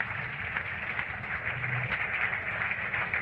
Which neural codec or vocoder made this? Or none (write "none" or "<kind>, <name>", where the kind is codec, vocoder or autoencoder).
none